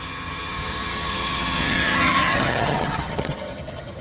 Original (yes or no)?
no